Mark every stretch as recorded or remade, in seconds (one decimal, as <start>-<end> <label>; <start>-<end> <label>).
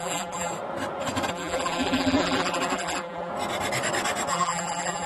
0.0-0.5 remade; 0.5-1.3 recorded; 1.3-3.3 remade; 3.3-4.3 recorded; 4.3-5.1 remade